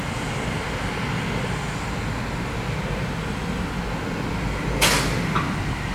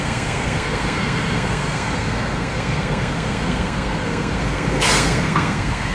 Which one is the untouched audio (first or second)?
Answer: first